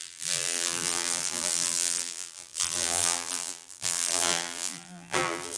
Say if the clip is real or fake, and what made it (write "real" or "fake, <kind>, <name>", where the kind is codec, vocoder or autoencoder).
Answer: fake, vocoder, BigVGAN v2